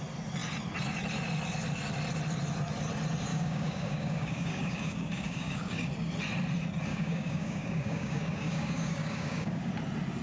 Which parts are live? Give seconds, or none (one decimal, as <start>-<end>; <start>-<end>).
0.0-3.3; 5.9-6.9; 9.7-10.2